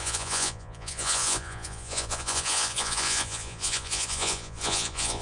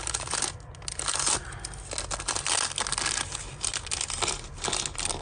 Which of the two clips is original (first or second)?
second